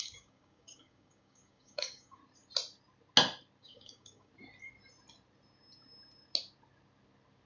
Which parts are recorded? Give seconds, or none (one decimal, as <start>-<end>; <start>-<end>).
2.2-3.6; 4.3-7.5